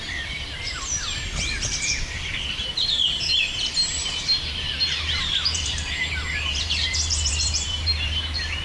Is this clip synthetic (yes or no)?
yes